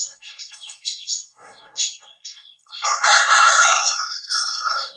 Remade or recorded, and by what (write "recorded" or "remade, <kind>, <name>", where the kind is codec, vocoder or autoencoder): remade, codec, SNAC